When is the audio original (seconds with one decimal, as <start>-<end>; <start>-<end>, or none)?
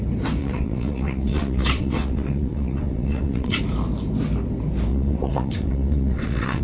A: 0.0-0.4; 3.6-4.9